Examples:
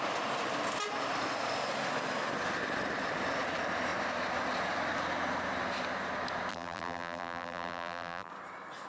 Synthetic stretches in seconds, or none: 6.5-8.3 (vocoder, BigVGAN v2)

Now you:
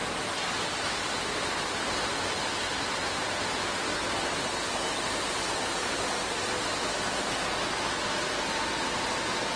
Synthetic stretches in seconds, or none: none

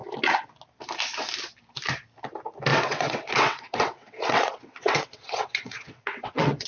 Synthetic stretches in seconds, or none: 2.7-6.7 (vocoder, WaveNeXt)

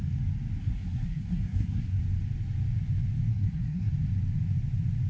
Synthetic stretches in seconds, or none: 0.6-2.0 (codec, SNAC); 3.3-3.9

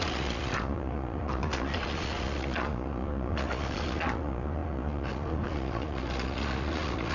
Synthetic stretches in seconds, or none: 0.0-7.1 (vocoder, Vocos)